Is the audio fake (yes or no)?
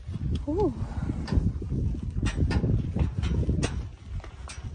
no